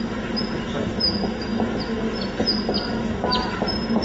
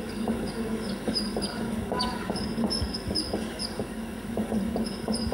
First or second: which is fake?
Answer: second